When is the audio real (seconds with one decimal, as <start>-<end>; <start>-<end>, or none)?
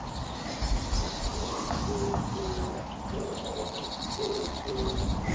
0.0-3.6; 4.7-5.3